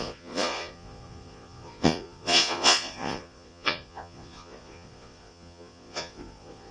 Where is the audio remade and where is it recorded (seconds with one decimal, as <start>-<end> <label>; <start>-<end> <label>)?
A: 0.0-6.7 remade